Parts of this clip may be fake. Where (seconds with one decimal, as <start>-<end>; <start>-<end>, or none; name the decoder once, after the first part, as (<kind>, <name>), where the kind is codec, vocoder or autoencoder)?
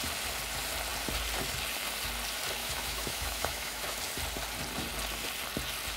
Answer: 2.6-4.0 (autoencoder, DAC-VAE)